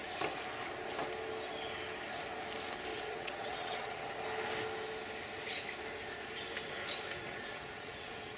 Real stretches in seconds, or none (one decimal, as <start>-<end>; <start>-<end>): 0.0-2.9; 4.2-7.2